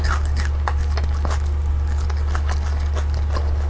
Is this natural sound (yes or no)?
yes